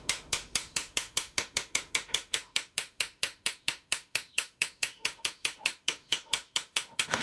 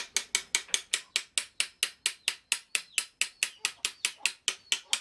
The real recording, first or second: second